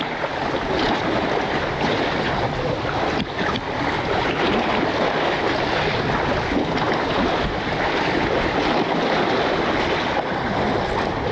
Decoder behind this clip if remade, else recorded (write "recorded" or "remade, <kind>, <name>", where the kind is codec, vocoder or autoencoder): recorded